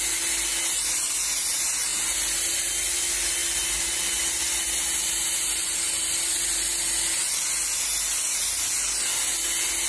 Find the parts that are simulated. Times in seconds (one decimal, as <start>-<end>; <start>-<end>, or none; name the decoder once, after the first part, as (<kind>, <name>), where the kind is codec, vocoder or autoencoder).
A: none